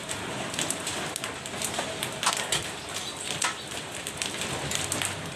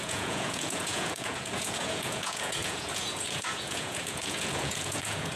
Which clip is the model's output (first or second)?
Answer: second